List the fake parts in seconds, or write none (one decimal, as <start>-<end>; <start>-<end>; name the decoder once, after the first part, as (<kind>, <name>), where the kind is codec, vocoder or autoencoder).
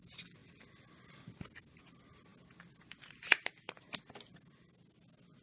none